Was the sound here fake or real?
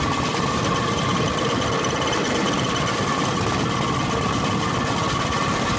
real